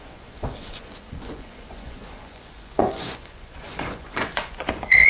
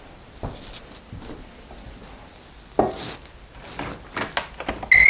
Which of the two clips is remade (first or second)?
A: first